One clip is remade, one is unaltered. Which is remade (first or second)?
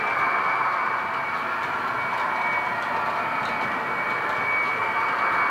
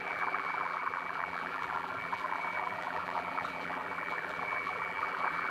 second